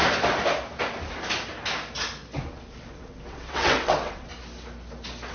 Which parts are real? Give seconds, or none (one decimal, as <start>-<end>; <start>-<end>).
0.0-2.7; 4.3-5.3